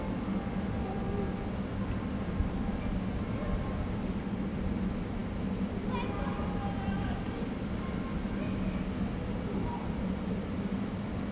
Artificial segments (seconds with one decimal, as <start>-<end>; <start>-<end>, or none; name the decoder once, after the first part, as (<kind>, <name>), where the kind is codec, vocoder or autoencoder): none

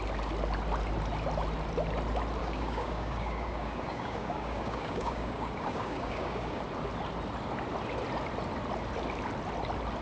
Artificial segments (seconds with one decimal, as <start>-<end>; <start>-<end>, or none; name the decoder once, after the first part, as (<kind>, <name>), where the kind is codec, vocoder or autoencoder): 2.4-6.6 (codec, DAC)

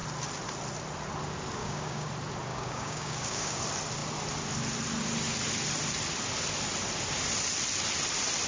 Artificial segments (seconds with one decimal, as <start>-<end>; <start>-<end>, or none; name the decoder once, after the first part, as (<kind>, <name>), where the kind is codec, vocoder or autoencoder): 1.6-2.1 (codec, DAC); 2.5-3.6